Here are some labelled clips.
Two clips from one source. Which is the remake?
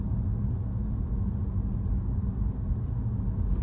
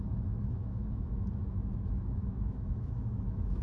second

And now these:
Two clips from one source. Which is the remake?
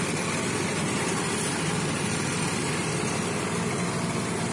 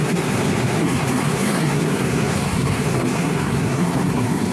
second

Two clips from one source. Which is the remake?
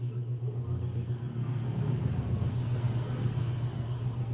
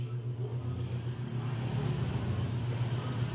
first